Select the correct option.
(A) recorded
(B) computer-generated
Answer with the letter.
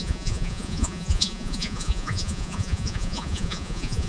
B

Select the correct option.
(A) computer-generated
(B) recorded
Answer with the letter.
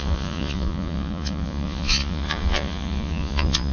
A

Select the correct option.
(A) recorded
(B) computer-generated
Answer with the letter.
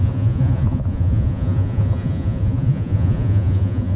B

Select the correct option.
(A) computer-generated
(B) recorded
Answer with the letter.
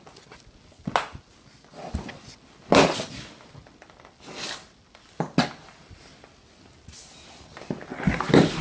B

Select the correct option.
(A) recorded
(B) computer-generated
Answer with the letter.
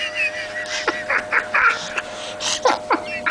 A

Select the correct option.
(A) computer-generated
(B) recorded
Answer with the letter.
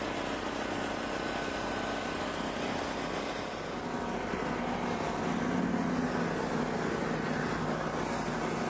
B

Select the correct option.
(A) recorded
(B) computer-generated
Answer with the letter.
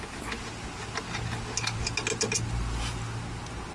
A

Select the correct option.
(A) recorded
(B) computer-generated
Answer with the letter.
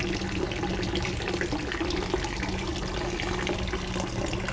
A